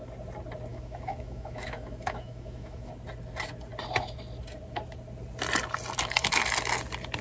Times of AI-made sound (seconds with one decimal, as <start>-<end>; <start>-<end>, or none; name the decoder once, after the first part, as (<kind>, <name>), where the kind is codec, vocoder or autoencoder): 0.7-2.9 (autoencoder, DAC-VAE)